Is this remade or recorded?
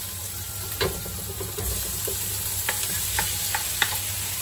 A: remade